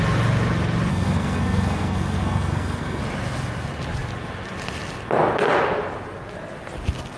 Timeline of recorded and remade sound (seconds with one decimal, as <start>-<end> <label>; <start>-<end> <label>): 0.0-0.9 recorded; 0.9-3.0 remade; 3.0-7.2 recorded